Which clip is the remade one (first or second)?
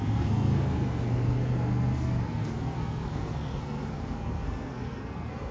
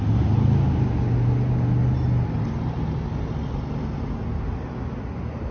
first